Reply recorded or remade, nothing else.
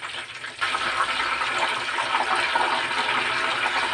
recorded